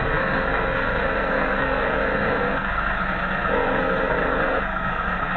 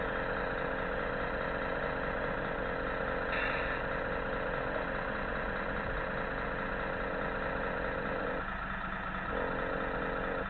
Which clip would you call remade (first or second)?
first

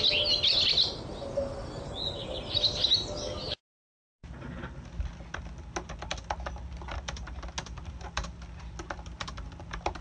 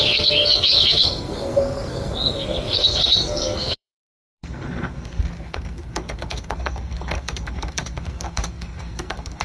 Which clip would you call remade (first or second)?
second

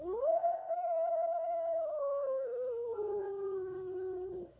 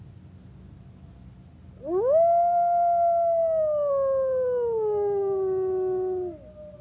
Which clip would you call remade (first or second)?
first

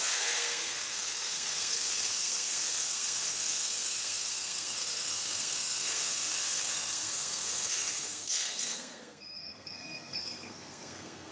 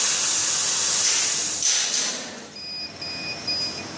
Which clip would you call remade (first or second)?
first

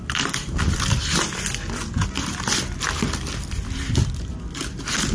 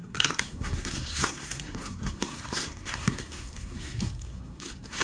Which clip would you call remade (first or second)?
second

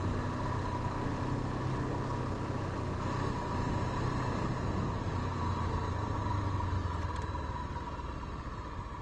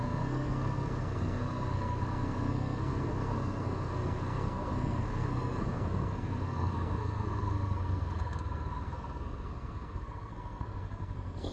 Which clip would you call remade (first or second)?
second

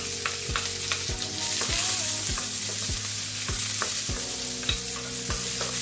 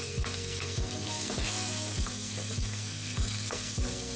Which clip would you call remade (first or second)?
second